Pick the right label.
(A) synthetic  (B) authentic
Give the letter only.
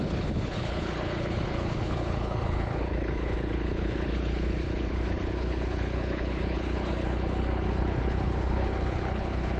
A